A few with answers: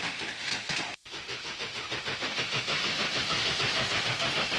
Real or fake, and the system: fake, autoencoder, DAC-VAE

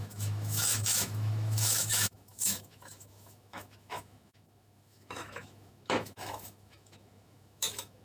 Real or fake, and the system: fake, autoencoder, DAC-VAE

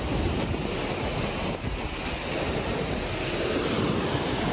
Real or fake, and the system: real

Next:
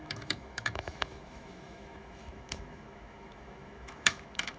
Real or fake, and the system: fake, autoencoder, DAC-VAE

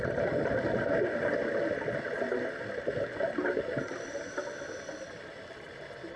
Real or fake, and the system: real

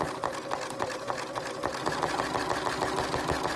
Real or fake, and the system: real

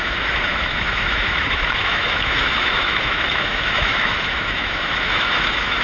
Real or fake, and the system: fake, autoencoder, DAC-VAE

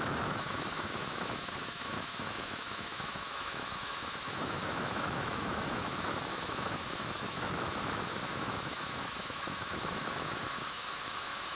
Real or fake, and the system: fake, autoencoder, DAC-VAE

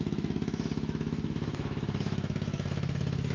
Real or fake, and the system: fake, autoencoder, DAC-VAE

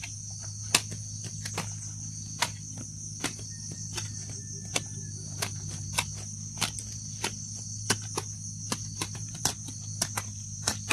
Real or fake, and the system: real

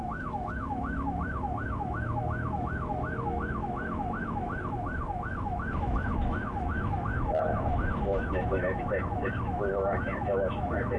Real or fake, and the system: fake, autoencoder, DAC-VAE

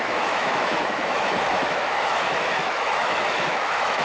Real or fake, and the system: fake, autoencoder, DAC-VAE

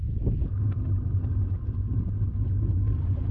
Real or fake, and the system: real